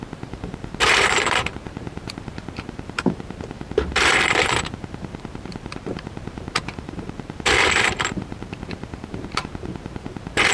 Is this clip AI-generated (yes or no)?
yes